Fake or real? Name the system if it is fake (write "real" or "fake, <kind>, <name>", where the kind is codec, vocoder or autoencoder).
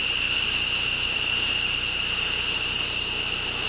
fake, vocoder, BigVGAN v2